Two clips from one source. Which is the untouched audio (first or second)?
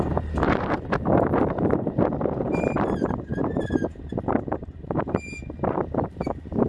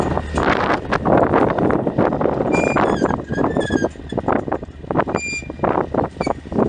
second